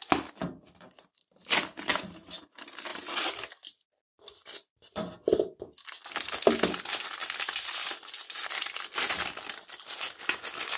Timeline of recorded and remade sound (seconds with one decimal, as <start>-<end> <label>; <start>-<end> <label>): 0.0-0.4 recorded; 0.4-1.9 remade; 1.9-2.9 recorded; 2.9-5.4 remade; 5.4-7.2 recorded; 7.2-9.2 remade; 9.2-10.8 recorded